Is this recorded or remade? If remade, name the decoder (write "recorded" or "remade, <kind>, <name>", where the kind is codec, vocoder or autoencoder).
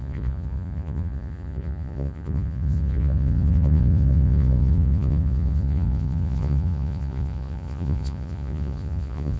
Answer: remade, vocoder, Vocos